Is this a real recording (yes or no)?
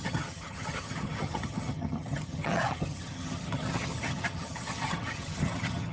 no